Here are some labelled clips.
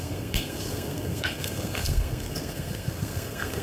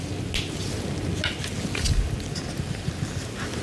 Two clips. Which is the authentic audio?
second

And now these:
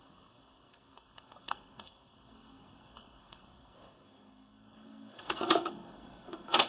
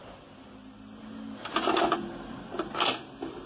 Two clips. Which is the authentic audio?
second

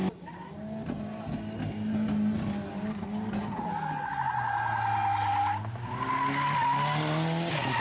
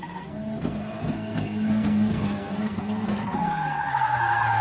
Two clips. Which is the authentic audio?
first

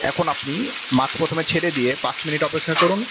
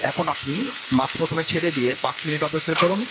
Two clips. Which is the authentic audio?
first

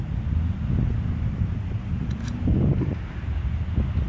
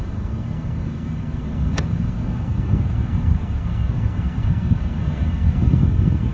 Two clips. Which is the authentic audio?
first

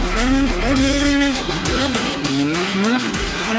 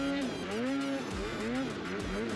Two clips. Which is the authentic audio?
second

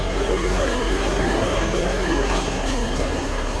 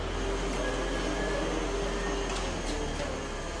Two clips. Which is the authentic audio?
second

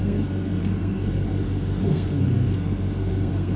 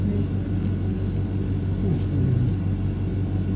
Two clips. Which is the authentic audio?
second